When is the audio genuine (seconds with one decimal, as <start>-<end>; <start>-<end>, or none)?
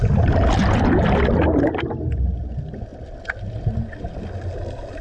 0.0-5.0